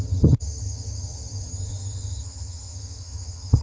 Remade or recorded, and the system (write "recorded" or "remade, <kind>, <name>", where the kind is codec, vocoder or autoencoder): remade, vocoder, HiFi-GAN